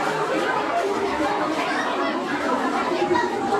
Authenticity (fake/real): real